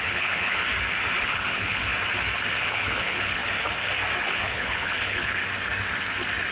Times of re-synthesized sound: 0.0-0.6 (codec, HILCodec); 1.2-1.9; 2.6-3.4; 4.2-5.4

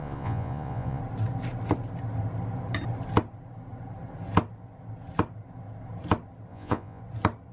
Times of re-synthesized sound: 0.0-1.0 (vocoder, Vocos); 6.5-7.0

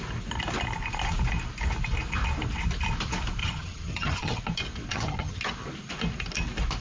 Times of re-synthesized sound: 3.4-4.4 (vocoder, HiFi-GAN); 4.9-5.4